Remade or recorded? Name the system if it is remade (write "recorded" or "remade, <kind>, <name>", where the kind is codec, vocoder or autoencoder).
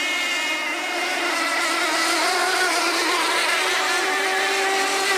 recorded